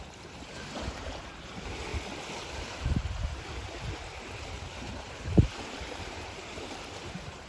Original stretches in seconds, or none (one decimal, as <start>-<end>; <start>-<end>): 1.9-2.6